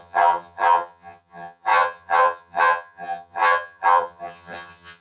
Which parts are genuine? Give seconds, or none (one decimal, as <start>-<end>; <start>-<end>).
none